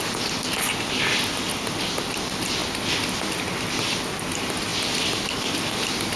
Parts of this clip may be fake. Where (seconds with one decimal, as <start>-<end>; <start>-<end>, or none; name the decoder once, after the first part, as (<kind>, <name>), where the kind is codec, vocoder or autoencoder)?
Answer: none